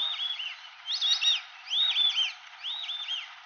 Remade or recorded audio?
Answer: recorded